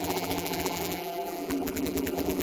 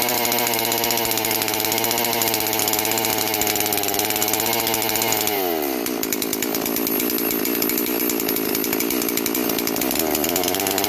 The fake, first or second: first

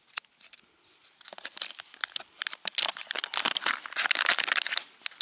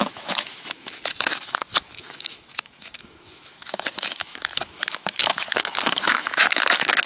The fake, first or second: second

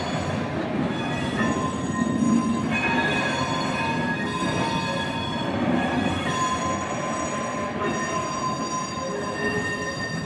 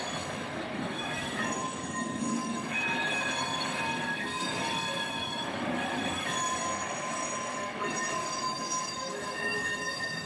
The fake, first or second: second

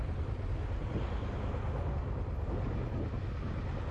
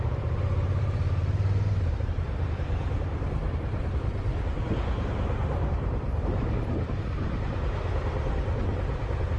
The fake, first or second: second